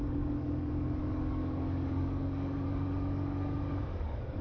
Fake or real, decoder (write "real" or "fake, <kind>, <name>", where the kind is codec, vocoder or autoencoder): fake, codec, DAC